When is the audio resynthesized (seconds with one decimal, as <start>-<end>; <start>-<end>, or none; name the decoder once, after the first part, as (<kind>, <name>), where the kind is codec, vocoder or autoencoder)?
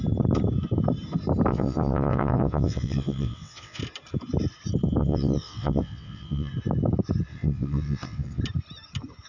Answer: 1.5-3.8 (vocoder, WaveNeXt); 5.0-6.5; 7.3-8.4